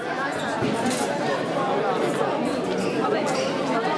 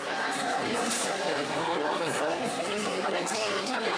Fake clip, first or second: second